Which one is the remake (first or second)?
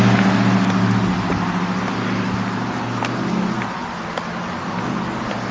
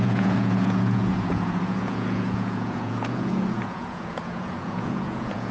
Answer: second